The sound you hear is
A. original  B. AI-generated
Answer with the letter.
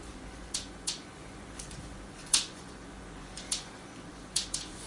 B